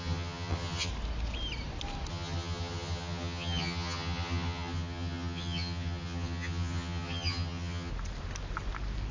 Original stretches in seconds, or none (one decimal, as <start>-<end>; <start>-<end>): 0.9-2.1; 7.9-9.1